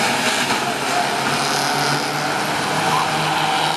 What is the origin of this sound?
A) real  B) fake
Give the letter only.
A